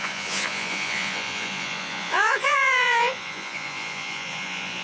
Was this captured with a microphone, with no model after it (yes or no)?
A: no